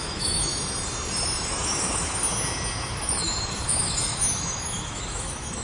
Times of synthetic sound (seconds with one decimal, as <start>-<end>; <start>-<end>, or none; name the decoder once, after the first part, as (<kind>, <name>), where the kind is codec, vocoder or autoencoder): 0.0-0.5 (autoencoder, DAC-VAE); 1.5-2.2; 3.2-5.6